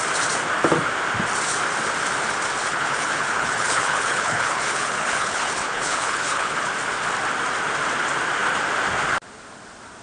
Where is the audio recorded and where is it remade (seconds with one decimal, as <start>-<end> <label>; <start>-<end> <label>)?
0.0-2.6 recorded; 2.6-6.7 remade; 6.7-10.0 recorded